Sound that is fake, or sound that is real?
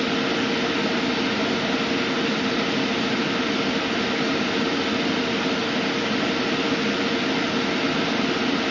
real